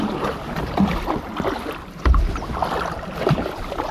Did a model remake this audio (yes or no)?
no